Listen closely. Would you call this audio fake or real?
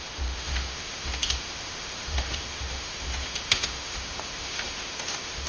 fake